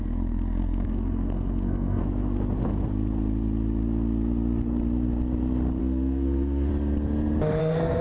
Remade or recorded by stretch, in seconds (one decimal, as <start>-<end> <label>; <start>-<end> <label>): 0.0-2.0 remade; 2.0-5.8 recorded; 5.8-6.7 remade; 6.7-7.6 recorded; 7.6-8.0 remade